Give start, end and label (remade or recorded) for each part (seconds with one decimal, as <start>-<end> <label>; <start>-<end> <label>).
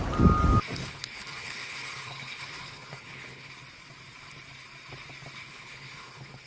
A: 0.0-0.8 recorded; 0.8-3.5 remade; 3.5-5.5 recorded; 5.5-6.5 remade